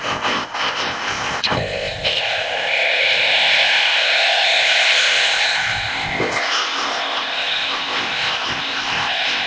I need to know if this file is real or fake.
fake